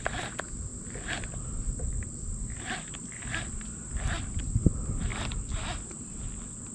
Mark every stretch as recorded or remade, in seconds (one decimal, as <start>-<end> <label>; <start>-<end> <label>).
0.0-5.1 recorded; 5.1-5.6 remade; 5.6-6.7 recorded